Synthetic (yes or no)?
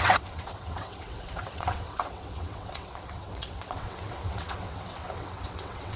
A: yes